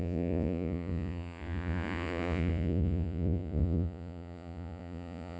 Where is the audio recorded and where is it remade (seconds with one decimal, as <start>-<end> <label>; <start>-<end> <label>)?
0.0-5.4 remade